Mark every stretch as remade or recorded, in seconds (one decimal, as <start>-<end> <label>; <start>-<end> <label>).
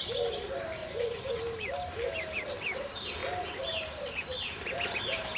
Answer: 0.0-0.8 recorded; 0.8-1.4 remade; 1.4-5.4 recorded